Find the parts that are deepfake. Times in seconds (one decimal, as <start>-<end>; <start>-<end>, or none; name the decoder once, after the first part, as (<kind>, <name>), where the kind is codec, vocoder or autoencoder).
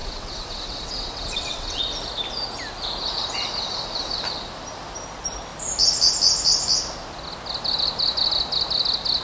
0.0-1.8 (vocoder, WaveNeXt)